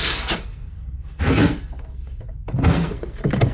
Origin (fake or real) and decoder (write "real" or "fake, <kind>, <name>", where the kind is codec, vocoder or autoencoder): fake, codec, SNAC